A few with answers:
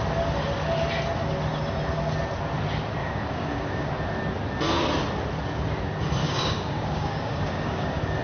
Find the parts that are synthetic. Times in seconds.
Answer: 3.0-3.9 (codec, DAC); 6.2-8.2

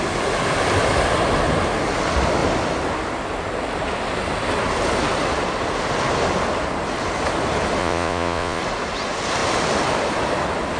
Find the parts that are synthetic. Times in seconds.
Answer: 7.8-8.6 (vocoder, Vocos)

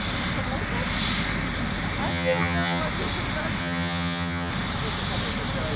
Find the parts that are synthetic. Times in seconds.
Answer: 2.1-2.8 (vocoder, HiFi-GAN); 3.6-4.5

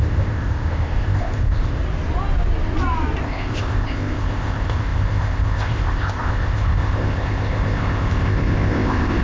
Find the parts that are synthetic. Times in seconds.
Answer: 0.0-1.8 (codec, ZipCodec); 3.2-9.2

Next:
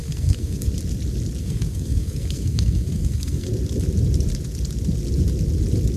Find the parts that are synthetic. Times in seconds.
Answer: 0.0-0.7 (codec, SNAC); 1.4-3.5

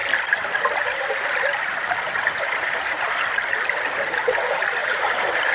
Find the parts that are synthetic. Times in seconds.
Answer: 4.8-5.5 (vocoder, BigVGAN v2)